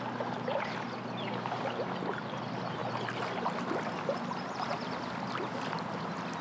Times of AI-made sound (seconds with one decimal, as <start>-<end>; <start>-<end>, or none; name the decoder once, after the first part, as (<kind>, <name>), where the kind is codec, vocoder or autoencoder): none